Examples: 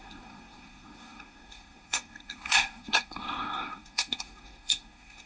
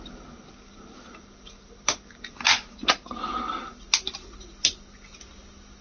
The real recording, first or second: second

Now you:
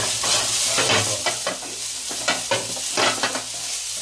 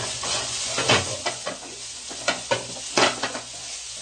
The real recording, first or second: first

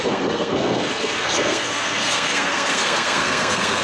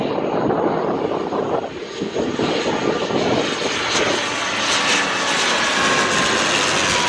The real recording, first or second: second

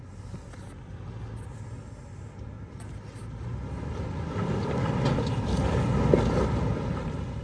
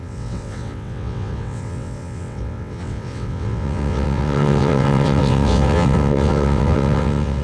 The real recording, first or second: first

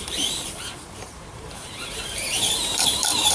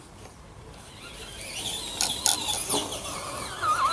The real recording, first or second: second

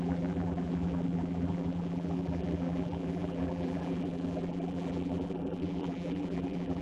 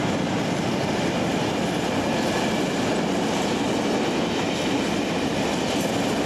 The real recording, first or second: second